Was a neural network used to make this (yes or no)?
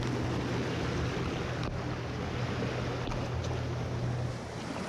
no